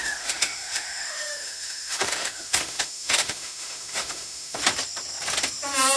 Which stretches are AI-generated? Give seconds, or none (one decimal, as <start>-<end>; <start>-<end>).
0.0-4.6

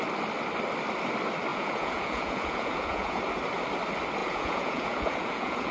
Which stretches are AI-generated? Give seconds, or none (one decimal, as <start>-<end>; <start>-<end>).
1.5-3.2; 4.2-5.7

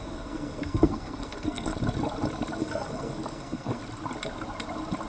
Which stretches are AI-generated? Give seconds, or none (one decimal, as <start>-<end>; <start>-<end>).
0.0-1.7; 2.6-3.8